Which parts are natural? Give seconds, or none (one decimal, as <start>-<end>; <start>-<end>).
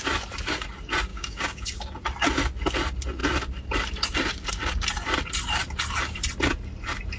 0.0-1.1; 1.8-7.2